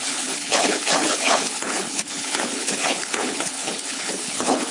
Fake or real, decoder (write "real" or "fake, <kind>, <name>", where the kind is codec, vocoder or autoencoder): fake, codec, HILCodec